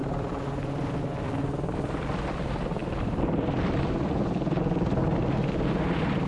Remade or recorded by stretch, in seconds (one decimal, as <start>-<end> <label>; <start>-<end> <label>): 0.0-1.0 remade; 1.0-2.8 recorded; 2.8-4.6 remade; 4.6-6.3 recorded